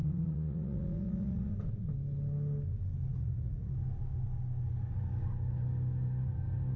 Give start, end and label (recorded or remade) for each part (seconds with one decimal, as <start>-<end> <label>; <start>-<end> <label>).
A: 0.0-1.5 remade; 1.5-3.1 recorded; 3.1-3.7 remade; 3.7-6.8 recorded